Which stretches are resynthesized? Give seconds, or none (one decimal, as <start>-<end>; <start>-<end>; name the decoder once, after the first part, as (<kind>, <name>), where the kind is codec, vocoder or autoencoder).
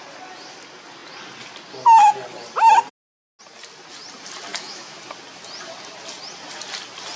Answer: 4.5-5.0 (autoencoder, DAC-VAE)